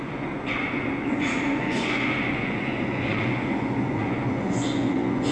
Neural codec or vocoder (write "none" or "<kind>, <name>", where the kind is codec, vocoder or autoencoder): vocoder, Vocos